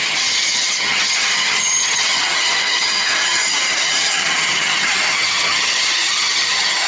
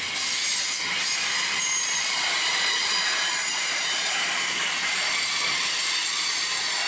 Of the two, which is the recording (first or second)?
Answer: second